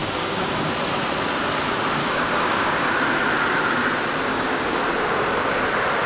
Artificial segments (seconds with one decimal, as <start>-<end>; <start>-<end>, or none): 0.0-0.7; 2.0-2.9; 4.3-4.8

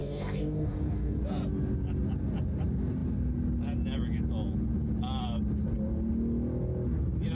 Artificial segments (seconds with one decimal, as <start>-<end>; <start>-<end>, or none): 0.0-1.2

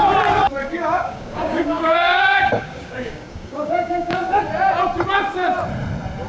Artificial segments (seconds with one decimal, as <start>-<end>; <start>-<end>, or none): 0.6-4.4